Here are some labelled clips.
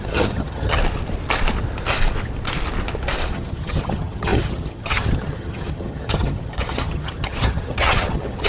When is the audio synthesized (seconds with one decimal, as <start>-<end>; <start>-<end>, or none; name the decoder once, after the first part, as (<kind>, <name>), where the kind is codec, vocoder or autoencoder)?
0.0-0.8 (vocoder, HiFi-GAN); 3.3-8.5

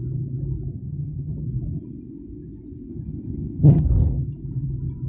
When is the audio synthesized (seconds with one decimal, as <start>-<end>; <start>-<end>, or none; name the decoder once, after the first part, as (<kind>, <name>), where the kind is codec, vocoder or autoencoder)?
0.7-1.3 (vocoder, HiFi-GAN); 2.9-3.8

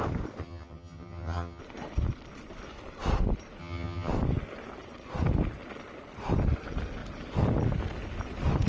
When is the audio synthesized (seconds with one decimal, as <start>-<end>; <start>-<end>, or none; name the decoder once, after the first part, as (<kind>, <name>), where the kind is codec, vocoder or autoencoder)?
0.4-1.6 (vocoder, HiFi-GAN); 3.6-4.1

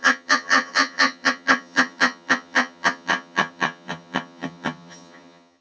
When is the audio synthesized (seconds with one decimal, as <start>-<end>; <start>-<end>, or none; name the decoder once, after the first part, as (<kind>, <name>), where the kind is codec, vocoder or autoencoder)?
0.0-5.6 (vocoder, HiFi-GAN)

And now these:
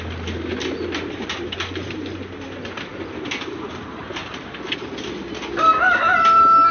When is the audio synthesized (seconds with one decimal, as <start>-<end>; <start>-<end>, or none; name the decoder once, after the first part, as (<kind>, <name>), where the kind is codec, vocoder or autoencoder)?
none

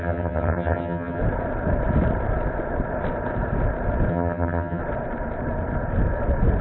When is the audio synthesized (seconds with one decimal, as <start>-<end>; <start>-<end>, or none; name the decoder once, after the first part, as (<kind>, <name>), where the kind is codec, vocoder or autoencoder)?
0.0-1.2 (vocoder, HiFi-GAN); 4.1-4.8

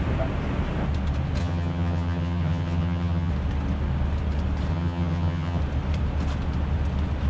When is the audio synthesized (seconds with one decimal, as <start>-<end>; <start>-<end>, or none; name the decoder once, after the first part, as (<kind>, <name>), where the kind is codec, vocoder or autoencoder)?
1.4-3.3 (vocoder, HiFi-GAN); 4.7-5.6

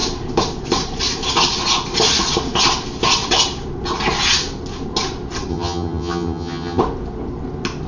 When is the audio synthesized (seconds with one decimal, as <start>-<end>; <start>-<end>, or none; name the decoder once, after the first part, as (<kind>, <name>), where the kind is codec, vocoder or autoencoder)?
5.5-6.8 (vocoder, HiFi-GAN)